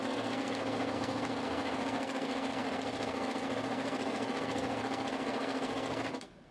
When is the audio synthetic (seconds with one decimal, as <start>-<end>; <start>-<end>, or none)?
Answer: 0.0-6.5